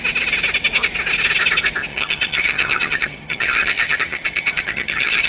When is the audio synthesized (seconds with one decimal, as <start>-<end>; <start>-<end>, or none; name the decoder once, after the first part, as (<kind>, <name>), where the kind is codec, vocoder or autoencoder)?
1.9-5.3 (vocoder, HiFi-GAN)